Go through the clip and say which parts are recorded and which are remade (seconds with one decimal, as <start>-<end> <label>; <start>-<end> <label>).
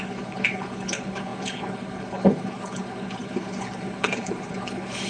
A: 0.0-5.1 remade